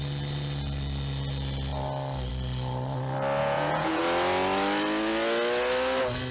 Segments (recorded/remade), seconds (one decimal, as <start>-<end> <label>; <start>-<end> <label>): 0.0-3.4 recorded; 3.4-4.0 remade; 4.0-6.3 recorded